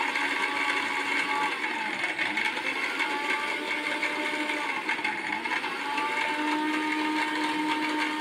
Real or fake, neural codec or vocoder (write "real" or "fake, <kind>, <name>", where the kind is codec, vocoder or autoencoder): real